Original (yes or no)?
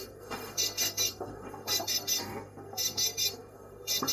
no